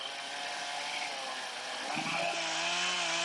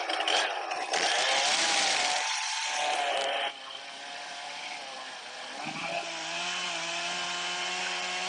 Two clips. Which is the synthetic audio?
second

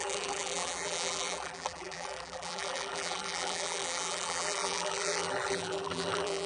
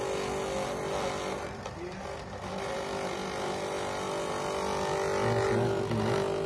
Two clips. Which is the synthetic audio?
first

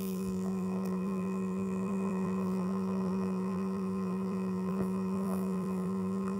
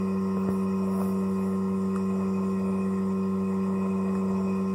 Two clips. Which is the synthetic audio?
first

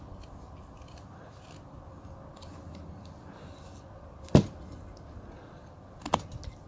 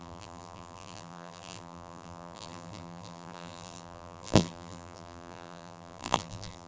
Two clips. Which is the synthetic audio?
second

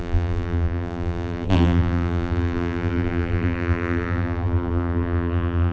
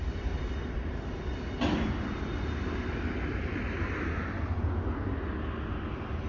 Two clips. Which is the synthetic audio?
first